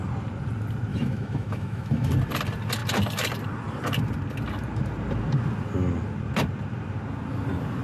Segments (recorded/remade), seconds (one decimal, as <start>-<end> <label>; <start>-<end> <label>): 0.0-0.9 recorded; 0.9-2.1 remade; 2.1-7.8 recorded